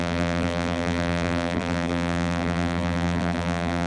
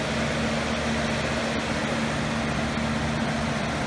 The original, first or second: second